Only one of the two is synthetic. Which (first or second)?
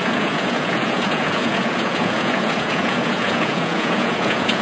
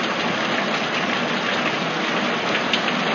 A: first